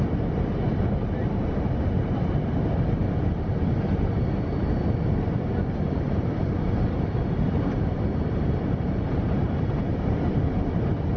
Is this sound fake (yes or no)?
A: yes